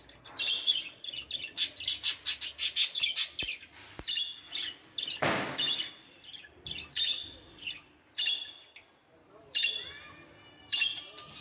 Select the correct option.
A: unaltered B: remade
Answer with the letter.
A